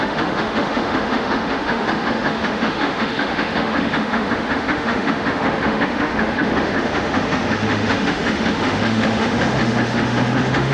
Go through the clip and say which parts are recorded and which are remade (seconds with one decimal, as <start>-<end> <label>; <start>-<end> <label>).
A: 0.0-10.7 remade